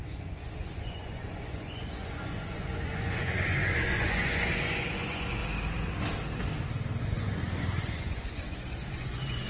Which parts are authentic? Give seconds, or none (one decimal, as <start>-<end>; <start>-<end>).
5.4-7.0